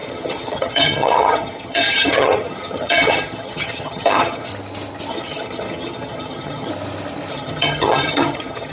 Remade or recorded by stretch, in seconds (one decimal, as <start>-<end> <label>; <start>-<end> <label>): 0.0-4.5 remade; 4.5-5.1 recorded; 5.1-6.7 remade; 6.7-7.3 recorded; 7.3-8.7 remade